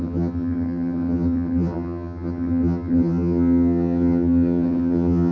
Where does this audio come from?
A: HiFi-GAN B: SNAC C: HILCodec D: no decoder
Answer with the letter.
A